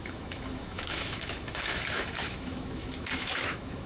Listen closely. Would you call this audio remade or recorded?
remade